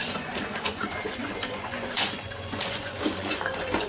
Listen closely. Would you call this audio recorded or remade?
remade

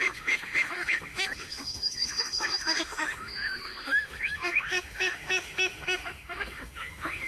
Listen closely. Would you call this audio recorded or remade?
remade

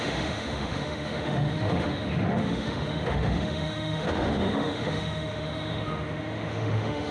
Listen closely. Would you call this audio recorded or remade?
remade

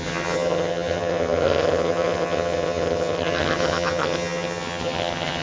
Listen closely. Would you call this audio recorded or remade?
remade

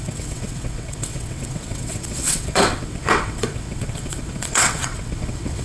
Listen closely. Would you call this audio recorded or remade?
remade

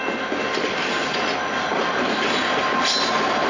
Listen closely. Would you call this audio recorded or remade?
recorded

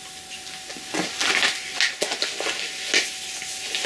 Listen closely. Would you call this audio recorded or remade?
recorded